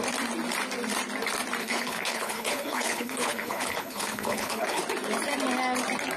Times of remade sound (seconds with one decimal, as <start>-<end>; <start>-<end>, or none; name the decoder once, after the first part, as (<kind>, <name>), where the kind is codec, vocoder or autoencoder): 1.6-4.8 (codec, HILCodec)